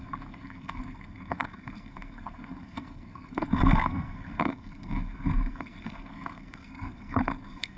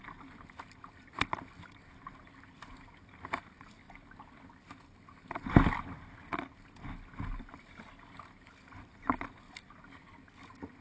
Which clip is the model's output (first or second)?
first